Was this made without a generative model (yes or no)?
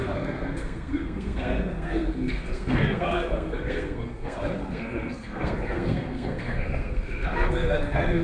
no